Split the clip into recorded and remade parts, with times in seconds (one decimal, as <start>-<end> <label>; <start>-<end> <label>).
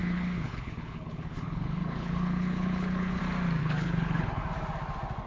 0.0-3.2 remade; 3.2-3.6 recorded; 3.6-4.4 remade; 4.4-5.3 recorded